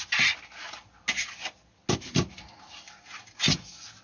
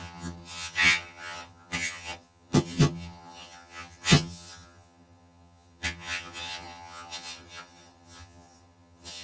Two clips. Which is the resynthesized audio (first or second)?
second